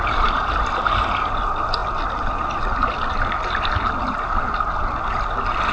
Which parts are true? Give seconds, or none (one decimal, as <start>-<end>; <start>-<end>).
0.0-5.7